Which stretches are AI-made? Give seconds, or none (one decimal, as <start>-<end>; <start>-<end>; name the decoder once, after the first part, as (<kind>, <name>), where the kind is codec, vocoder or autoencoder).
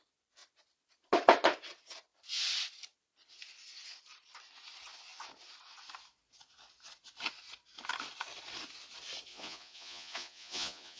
9.3-11.0 (vocoder, Vocos)